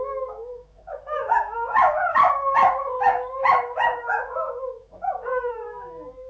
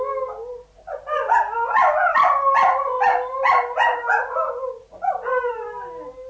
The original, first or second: second